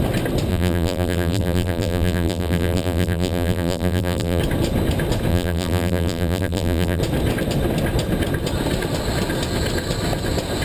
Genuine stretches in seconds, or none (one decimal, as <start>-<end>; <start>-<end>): 0.0-0.5; 4.4-5.3; 7.0-10.6